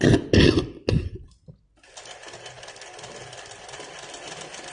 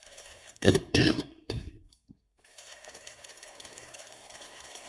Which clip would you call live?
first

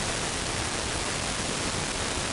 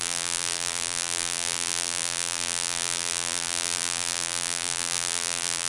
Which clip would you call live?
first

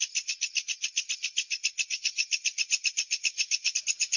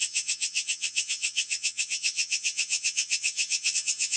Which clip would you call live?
first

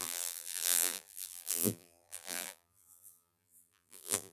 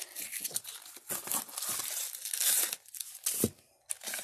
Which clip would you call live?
second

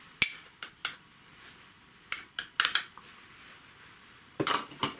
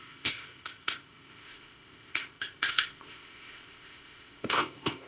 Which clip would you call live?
first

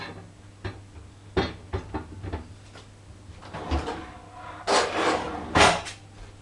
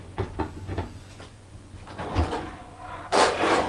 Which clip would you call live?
first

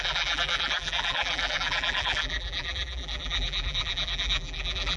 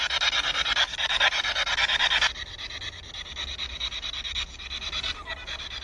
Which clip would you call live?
second